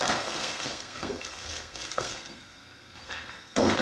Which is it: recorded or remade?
remade